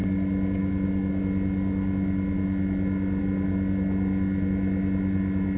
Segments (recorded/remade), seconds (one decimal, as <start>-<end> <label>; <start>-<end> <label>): 0.0-5.6 recorded

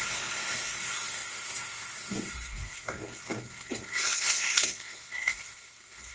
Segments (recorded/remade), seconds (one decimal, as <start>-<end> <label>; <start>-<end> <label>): 0.0-6.1 remade

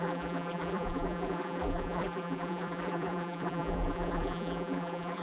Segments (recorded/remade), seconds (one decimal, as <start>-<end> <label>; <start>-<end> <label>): 0.0-5.2 remade